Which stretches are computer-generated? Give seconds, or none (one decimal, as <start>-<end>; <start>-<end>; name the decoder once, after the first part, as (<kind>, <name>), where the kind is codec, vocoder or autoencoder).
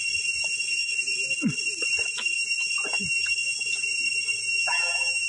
4.6-5.3 (vocoder, BigVGAN v2)